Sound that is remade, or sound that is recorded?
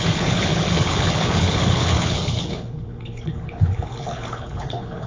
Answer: remade